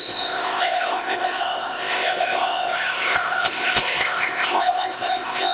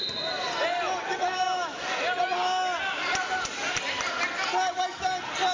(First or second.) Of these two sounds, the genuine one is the second